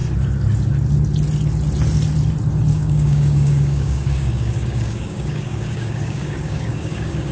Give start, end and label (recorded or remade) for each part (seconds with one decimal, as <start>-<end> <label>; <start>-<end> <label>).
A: 0.0-2.7 recorded; 2.7-7.3 remade